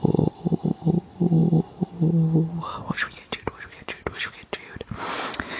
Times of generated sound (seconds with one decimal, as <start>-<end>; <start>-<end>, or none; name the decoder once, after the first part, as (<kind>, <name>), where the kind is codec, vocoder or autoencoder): none